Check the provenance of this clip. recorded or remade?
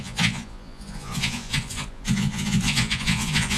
remade